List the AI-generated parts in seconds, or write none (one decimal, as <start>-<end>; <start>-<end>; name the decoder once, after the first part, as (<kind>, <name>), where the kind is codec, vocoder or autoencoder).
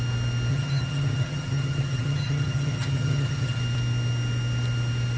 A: 0.5-3.6 (vocoder, HiFi-GAN)